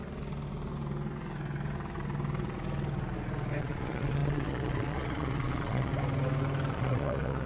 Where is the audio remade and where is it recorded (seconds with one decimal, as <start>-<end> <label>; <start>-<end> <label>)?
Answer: 0.0-3.6 recorded; 3.6-5.9 remade; 5.9-6.7 recorded; 6.7-7.5 remade